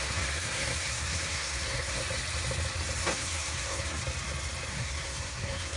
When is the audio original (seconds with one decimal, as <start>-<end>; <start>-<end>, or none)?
2.0-3.0; 4.0-4.7